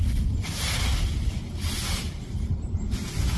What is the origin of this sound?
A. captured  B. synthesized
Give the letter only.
A